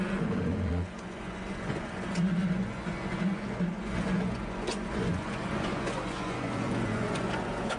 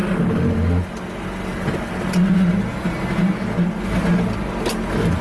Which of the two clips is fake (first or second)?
first